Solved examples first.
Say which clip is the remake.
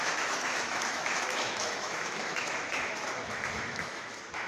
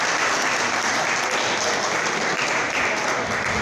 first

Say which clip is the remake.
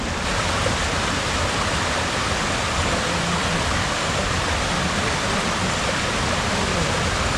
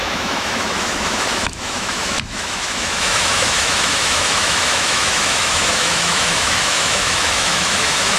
second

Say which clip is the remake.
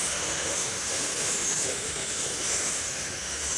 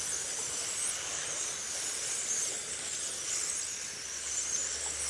first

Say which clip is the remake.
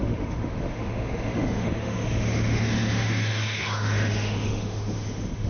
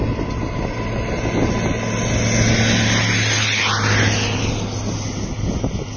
first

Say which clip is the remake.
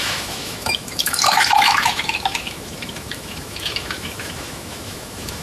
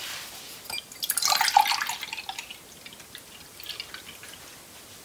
first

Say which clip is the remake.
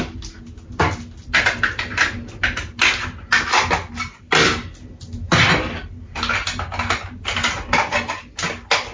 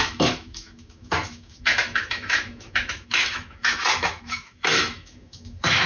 second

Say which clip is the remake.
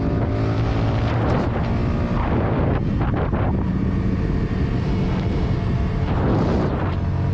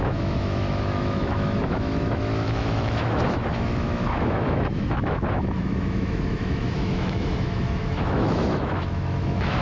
second